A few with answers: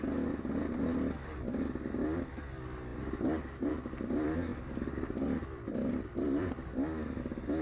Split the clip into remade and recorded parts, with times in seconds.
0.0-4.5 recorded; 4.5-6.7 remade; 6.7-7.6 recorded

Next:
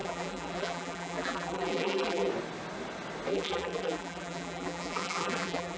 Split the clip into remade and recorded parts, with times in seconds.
0.0-2.3 remade; 2.3-3.3 recorded; 3.3-5.8 remade

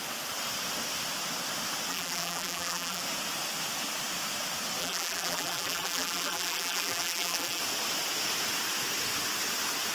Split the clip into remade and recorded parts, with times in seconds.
0.0-1.9 recorded; 1.9-3.0 remade; 3.0-4.8 recorded; 4.8-7.6 remade; 7.6-9.9 recorded

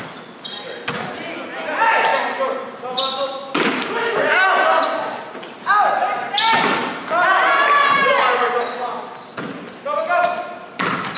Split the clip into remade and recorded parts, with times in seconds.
0.0-11.2 recorded

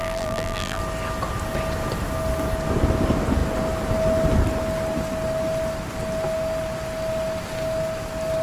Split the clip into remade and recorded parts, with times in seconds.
0.0-0.8 remade; 0.8-8.4 recorded